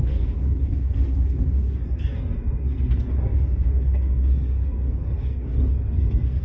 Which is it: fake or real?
fake